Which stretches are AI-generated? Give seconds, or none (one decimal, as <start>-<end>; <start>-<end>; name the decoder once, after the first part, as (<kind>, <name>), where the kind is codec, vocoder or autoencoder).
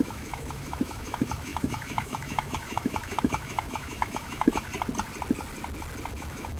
0.0-4.7 (autoencoder, DAC-VAE); 6.1-6.6